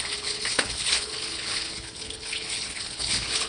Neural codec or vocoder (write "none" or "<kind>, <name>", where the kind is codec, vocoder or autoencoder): codec, HILCodec